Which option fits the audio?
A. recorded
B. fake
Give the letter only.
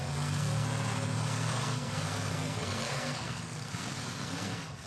B